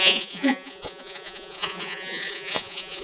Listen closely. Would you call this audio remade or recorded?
remade